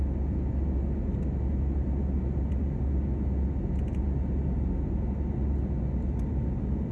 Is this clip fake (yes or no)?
no